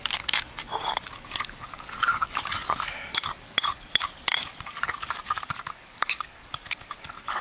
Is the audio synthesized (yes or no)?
yes